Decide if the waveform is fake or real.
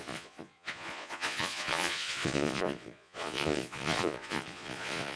fake